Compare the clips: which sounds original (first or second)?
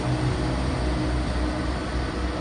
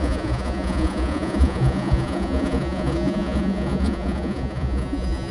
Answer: first